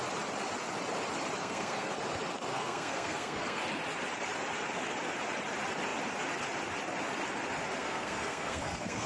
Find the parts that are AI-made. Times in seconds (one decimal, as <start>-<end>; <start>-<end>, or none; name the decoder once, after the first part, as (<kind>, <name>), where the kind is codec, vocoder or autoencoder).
1.4-1.9 (codec, SNAC); 2.5-3.6; 7.8-9.1